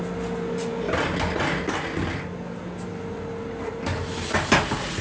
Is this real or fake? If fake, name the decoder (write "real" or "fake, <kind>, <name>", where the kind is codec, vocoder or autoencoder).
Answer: real